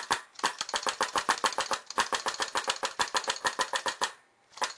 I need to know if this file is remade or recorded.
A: recorded